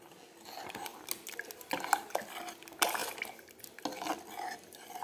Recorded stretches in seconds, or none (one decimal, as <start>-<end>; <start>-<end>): 0.0-5.0